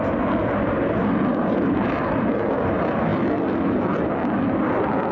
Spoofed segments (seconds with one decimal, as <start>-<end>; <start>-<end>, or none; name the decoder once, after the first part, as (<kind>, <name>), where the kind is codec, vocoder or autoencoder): 1.3-2.3 (vocoder, BigVGAN v2)